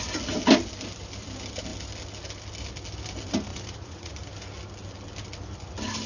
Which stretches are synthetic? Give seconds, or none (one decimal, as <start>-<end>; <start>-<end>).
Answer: 3.5-4.1